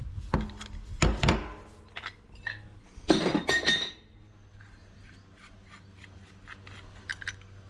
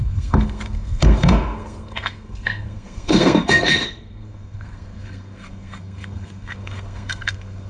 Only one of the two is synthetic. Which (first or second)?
second